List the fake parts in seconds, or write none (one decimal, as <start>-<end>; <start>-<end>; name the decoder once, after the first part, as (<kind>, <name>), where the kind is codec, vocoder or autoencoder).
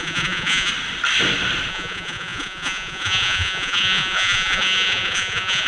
0.0-0.7 (vocoder, Vocos); 1.7-5.7